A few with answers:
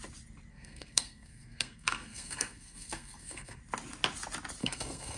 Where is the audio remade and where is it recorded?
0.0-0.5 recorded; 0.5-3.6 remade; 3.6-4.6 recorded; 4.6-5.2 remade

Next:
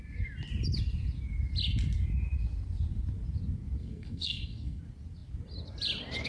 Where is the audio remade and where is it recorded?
0.0-3.8 recorded; 3.8-4.8 remade; 4.8-6.3 recorded